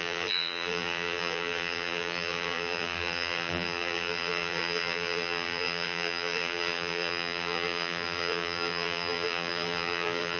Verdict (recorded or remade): remade